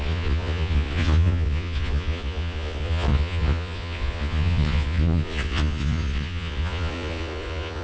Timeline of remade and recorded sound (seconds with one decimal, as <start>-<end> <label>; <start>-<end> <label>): 0.0-7.8 remade